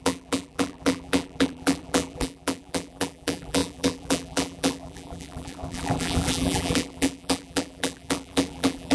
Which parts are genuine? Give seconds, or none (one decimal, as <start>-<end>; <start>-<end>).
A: none